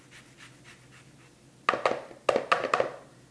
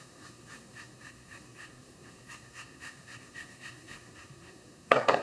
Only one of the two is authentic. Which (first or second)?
first